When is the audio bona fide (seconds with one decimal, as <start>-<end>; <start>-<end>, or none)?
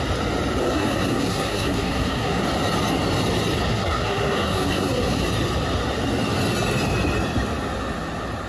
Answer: 0.0-0.6; 2.4-3.7; 5.2-8.5